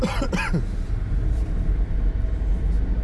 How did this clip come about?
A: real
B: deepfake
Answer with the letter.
A